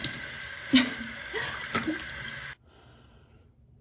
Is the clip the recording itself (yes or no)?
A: yes